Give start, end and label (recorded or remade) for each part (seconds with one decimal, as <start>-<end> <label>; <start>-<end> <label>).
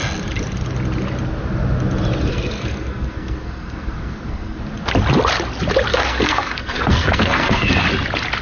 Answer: 0.0-2.3 recorded; 2.3-4.6 remade; 4.6-5.9 recorded; 5.9-7.7 remade; 7.7-8.4 recorded